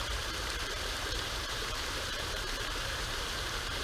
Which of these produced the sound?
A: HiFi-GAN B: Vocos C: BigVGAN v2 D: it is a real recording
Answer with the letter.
C